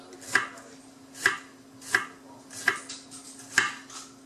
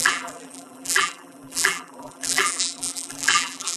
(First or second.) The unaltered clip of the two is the first